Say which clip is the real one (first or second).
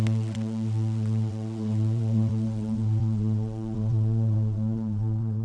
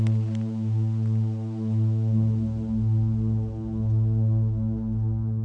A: second